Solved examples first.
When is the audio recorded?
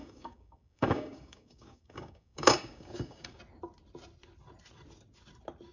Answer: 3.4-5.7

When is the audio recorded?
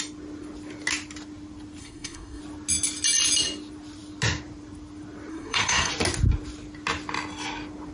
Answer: 0.0-1.8; 2.4-5.3; 5.9-7.9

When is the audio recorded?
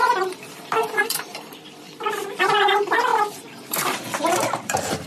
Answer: none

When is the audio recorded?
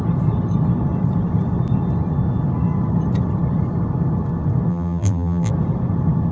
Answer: 0.0-4.7; 5.5-6.3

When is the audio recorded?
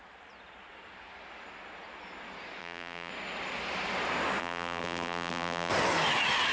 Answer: 0.0-2.6; 3.1-4.4; 5.7-6.5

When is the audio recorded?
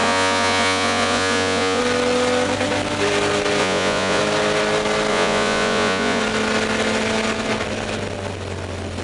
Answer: 1.8-3.6; 4.2-5.1; 6.2-9.0